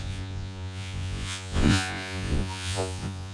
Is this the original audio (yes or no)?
no